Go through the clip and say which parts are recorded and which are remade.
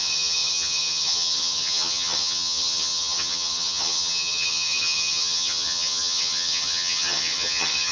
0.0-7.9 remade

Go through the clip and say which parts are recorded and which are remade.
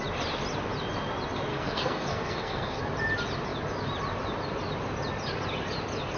0.0-1.5 recorded; 1.5-2.8 remade; 2.8-6.2 recorded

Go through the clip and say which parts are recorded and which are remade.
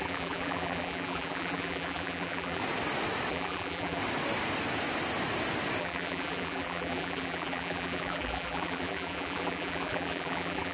0.0-2.6 remade; 2.6-3.3 recorded; 3.3-4.0 remade; 4.0-5.8 recorded; 5.8-10.7 remade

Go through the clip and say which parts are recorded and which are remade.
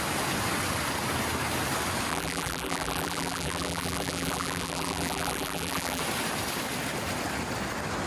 0.0-2.1 recorded; 2.1-6.0 remade; 6.0-8.1 recorded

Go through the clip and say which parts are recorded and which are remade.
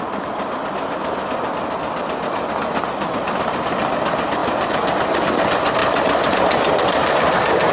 0.0-4.4 recorded; 4.4-5.3 remade; 5.3-5.8 recorded; 5.8-7.2 remade; 7.2-7.7 recorded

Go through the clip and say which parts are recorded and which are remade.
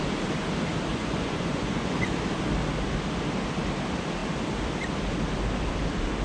0.0-0.9 recorded; 0.9-2.1 remade; 2.1-6.2 recorded